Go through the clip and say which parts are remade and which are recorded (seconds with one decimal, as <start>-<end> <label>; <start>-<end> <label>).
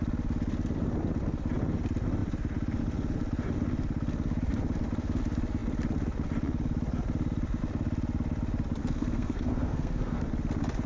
0.0-8.8 recorded; 8.8-10.2 remade; 10.2-10.9 recorded